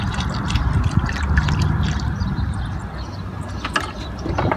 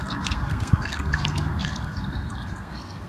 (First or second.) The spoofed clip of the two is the second